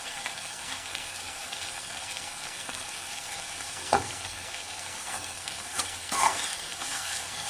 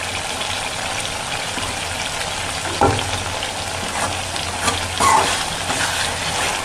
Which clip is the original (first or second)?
second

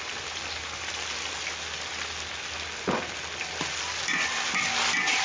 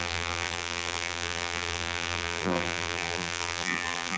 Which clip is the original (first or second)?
first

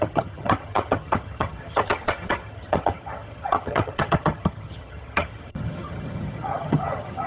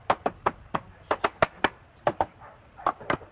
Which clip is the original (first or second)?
second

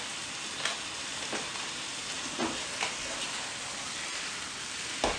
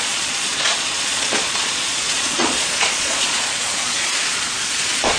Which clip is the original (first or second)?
first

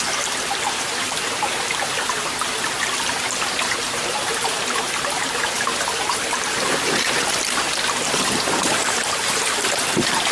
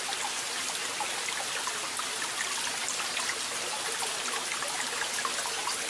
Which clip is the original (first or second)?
second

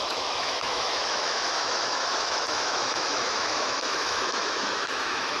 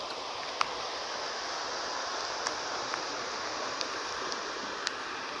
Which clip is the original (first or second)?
second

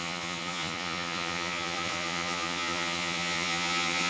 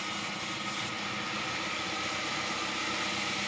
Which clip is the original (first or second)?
second